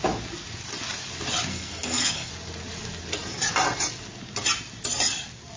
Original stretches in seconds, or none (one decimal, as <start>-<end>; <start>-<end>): 0.0-1.5; 2.3-5.6